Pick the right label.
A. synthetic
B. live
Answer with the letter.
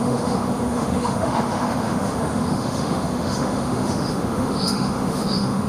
A